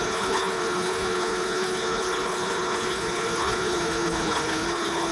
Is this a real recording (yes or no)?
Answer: no